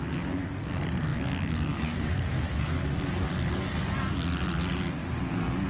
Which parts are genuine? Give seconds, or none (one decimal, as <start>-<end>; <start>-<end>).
0.0-1.1; 2.7-5.7